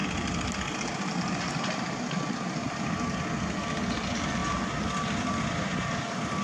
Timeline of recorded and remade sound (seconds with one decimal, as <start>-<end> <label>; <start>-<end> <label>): 0.0-1.6 recorded; 1.6-6.4 remade